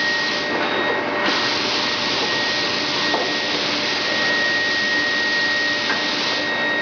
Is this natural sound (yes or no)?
yes